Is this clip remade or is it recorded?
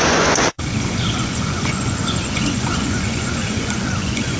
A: remade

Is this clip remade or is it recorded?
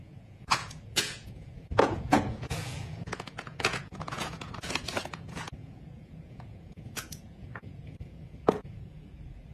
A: remade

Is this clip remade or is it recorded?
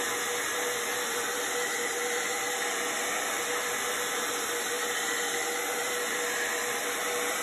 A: recorded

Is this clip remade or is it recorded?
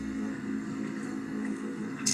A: remade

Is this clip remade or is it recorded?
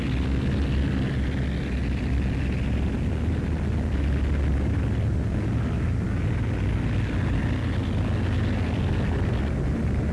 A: recorded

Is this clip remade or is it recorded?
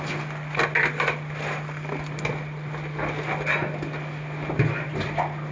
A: recorded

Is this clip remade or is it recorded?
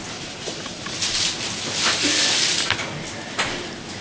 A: recorded